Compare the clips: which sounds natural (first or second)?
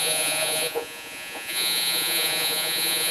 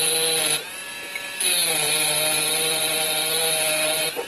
second